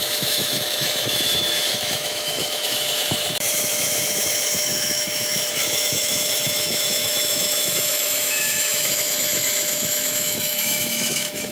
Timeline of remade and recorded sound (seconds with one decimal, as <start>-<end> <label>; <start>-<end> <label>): 0.0-11.5 remade